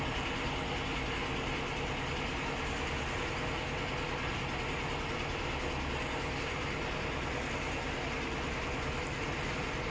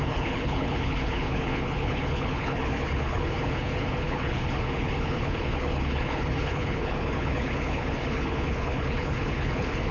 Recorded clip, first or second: first